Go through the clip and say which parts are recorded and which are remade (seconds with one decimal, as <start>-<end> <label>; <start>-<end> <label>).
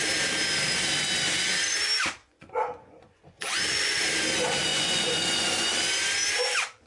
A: 0.0-2.2 recorded; 2.2-4.0 remade; 4.0-4.7 recorded; 4.7-5.7 remade; 5.7-6.9 recorded